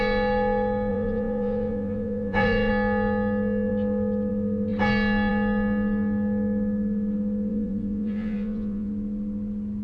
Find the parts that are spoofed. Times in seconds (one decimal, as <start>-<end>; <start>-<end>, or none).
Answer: 0.9-2.7; 7.5-8.9